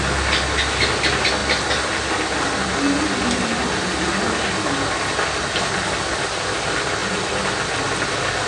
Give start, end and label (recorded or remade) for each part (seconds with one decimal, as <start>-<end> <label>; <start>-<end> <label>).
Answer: 0.0-8.5 recorded

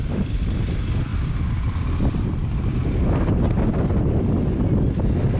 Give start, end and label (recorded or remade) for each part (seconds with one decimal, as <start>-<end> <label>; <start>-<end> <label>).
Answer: 0.0-1.1 remade; 1.1-3.8 recorded; 3.8-5.4 remade

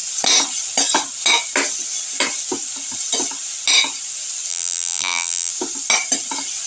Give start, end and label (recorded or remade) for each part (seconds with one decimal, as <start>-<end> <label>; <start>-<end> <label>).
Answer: 0.0-4.5 recorded; 4.5-5.5 remade; 5.5-6.7 recorded